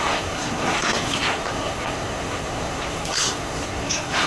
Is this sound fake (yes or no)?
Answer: yes